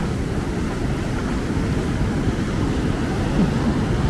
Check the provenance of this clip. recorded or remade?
recorded